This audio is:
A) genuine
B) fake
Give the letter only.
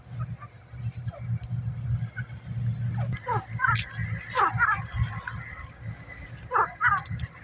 A